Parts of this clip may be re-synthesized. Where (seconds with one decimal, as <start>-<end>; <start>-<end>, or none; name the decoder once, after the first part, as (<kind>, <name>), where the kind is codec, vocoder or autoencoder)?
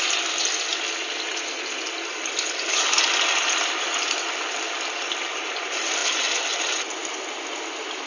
none